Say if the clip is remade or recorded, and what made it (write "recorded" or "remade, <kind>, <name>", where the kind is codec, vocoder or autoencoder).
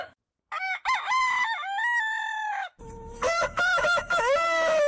remade, autoencoder, DAC-VAE